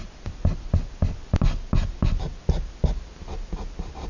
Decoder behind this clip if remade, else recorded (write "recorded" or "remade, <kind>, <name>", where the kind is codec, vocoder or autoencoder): recorded